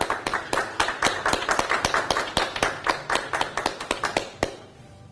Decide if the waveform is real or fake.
real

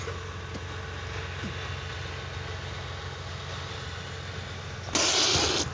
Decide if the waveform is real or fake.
real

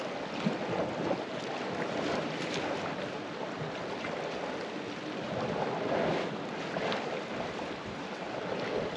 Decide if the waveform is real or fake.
real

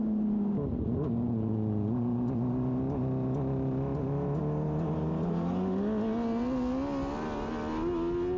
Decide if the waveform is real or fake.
real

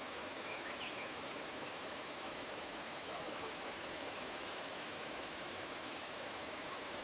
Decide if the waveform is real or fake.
fake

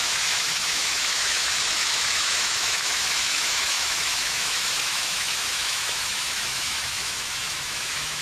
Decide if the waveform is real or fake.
fake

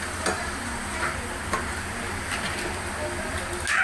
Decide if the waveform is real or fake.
real